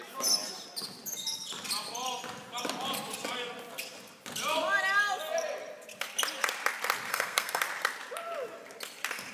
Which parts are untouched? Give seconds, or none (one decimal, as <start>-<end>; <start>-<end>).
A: 0.0-7.1; 7.6-9.3